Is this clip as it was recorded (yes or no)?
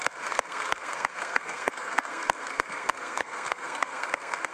no